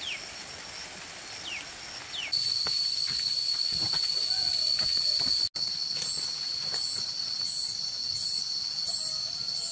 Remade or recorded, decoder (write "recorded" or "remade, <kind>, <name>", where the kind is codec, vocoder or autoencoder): recorded